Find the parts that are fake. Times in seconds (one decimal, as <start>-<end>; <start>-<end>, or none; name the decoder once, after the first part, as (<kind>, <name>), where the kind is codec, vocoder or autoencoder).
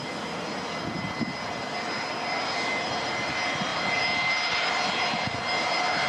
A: none